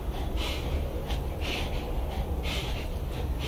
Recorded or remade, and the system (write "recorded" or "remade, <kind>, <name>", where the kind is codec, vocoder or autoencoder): recorded